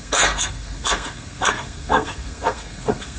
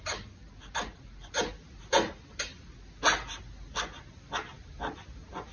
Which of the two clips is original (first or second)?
second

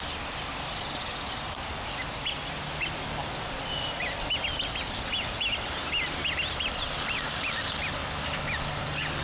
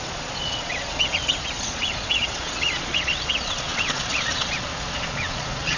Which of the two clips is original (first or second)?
first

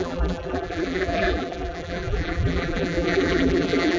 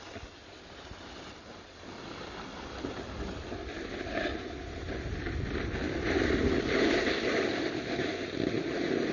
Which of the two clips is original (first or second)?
second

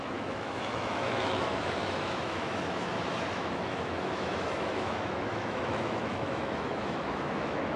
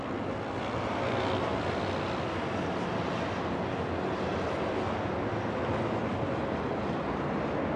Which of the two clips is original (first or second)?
second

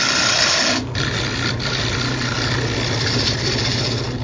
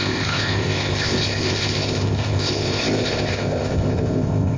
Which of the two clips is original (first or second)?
first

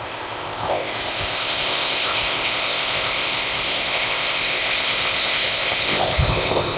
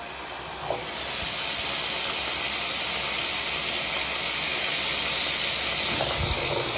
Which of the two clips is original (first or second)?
second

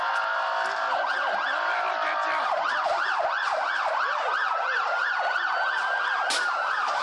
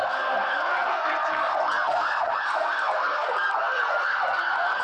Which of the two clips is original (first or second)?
first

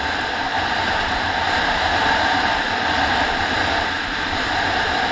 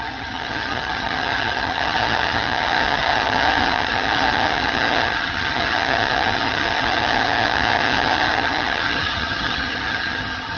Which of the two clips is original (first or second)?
first